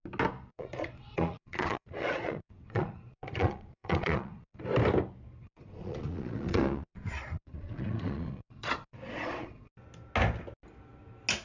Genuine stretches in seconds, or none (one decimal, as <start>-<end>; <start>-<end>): 0.0-0.5; 4.6-5.4; 9.7-11.4